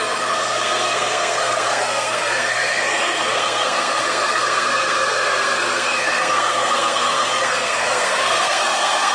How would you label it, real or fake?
fake